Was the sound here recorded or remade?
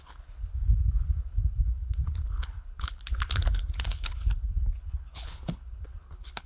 remade